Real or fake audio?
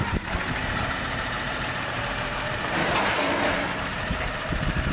fake